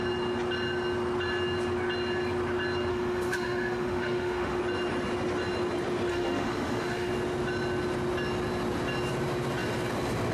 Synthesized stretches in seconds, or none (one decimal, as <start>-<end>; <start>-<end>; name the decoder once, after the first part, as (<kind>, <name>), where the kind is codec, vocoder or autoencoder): 2.9-4.6 (autoencoder, DAC-VAE); 6.1-7.1